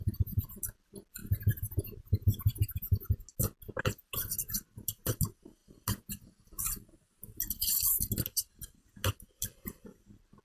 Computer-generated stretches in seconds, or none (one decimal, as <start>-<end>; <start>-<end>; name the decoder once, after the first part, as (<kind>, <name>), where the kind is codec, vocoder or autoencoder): none